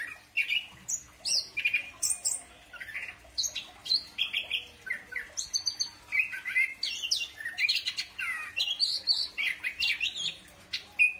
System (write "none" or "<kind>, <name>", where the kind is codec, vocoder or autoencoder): none